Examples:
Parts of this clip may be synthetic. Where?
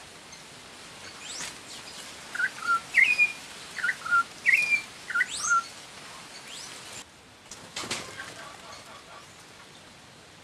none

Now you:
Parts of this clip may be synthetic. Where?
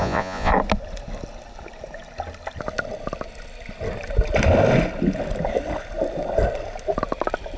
0.0-0.5 (vocoder, Vocos)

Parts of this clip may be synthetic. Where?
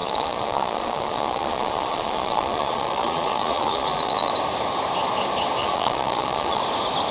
0.0-4.3 (vocoder, Vocos); 5.6-6.6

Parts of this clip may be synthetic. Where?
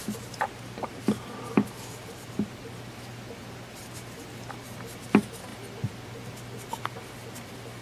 none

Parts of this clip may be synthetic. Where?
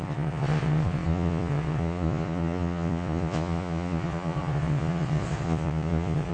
0.0-6.3 (vocoder, Vocos)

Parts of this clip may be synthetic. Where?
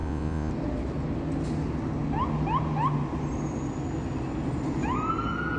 0.0-0.5 (vocoder, Vocos)